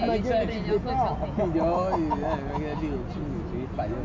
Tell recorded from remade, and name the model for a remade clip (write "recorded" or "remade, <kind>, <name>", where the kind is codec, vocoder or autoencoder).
recorded